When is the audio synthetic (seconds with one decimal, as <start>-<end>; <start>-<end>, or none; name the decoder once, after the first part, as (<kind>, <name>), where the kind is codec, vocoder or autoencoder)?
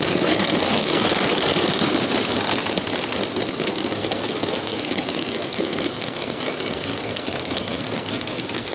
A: 0.0-1.5 (codec, SNAC); 3.5-8.7